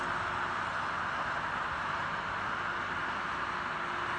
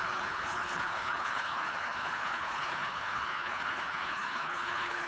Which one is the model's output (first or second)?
second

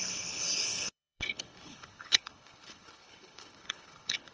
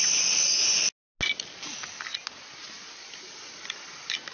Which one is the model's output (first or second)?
first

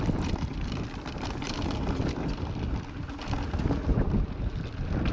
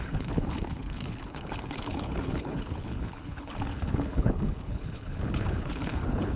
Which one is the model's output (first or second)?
second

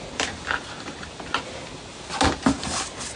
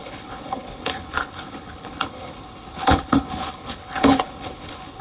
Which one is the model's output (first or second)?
second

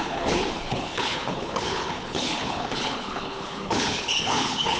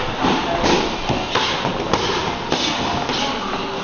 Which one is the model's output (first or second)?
first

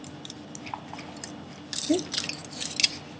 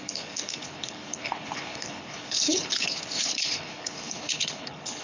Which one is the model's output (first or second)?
second